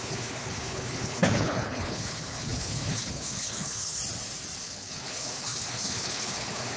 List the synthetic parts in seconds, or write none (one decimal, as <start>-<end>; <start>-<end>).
0.0-4.0; 4.6-6.8